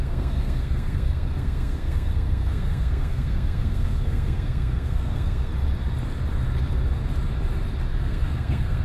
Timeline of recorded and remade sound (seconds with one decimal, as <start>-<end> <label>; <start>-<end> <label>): 0.0-5.5 remade; 5.5-8.0 recorded; 8.0-8.8 remade